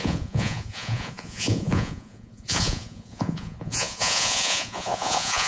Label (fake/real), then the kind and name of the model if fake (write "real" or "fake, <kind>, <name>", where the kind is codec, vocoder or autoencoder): fake, vocoder, Vocos